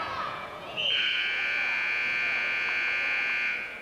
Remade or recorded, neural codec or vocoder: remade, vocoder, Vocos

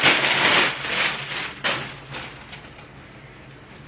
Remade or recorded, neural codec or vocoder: recorded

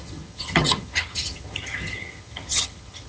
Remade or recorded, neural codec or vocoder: remade, vocoder, HiFi-GAN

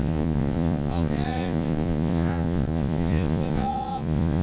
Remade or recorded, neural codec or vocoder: remade, vocoder, Vocos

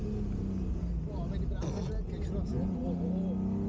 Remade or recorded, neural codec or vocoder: recorded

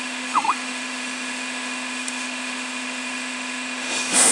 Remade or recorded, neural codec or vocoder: remade, autoencoder, DAC-VAE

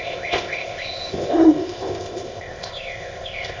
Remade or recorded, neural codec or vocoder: remade, codec, ZipCodec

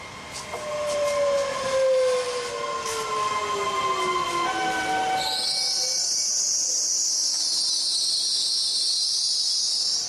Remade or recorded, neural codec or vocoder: recorded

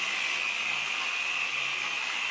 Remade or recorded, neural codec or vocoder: recorded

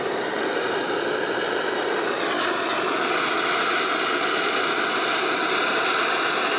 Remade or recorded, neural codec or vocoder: recorded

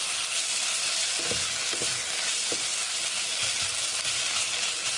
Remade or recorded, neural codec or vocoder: recorded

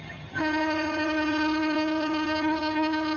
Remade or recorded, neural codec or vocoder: remade, vocoder, HiFi-GAN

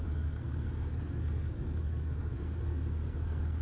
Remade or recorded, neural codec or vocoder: remade, codec, SNAC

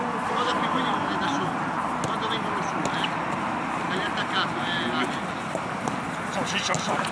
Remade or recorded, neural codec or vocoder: recorded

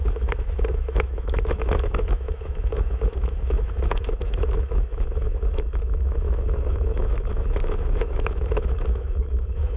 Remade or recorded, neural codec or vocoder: remade, autoencoder, DAC-VAE